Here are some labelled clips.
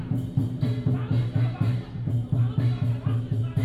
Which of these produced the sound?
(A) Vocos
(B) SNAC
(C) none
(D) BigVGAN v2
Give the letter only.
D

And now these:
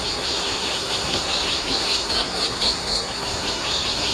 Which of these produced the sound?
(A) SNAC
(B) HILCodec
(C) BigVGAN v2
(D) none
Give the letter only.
A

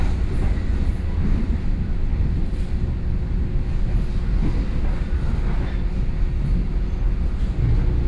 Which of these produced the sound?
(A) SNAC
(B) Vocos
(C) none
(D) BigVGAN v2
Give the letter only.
C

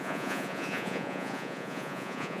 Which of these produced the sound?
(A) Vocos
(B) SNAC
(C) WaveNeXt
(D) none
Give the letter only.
A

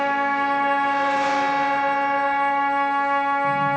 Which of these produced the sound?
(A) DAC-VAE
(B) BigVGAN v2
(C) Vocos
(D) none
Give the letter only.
D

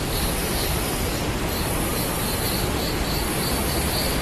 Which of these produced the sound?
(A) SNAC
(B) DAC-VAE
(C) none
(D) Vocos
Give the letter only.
C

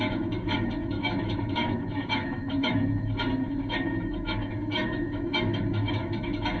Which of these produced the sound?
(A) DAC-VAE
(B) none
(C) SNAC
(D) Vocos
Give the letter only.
A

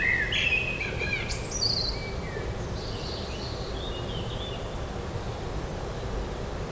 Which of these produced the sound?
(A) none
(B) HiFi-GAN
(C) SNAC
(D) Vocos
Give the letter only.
A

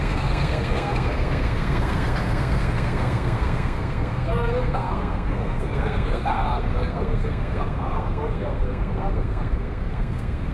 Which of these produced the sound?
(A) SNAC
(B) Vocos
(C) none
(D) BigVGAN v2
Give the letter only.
A